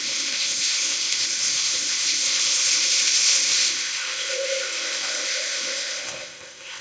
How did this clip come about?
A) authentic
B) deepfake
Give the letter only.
B